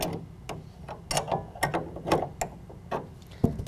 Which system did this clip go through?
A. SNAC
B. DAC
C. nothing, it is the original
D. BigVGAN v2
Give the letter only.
C